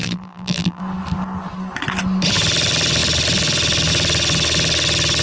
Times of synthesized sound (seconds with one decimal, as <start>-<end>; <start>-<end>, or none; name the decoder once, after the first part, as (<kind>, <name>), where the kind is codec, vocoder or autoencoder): 0.0-0.8 (vocoder, BigVGAN v2)